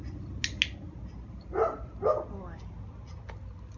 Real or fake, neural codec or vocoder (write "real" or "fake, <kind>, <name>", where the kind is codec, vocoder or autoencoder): real